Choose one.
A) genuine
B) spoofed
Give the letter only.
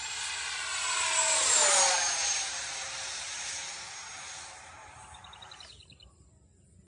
A